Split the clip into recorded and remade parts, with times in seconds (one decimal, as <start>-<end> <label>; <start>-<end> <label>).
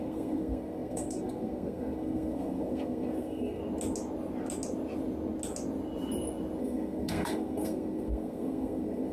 0.0-3.6 remade; 3.6-6.6 recorded; 6.6-9.1 remade